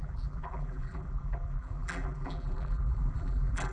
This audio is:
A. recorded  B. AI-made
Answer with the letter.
B